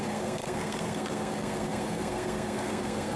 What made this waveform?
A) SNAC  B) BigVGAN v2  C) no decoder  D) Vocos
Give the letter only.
A